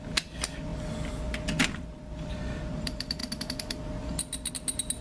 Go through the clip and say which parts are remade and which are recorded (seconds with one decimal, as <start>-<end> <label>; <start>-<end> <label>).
0.0-5.0 recorded